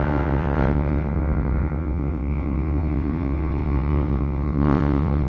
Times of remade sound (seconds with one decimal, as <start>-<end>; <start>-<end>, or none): 0.0-5.3